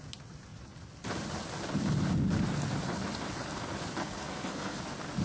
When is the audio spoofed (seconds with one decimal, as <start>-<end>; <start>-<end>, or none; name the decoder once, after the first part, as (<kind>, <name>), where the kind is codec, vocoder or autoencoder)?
4.0-4.8 (codec, SNAC)